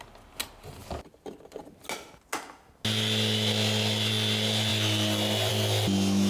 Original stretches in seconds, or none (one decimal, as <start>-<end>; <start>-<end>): 0.0-6.3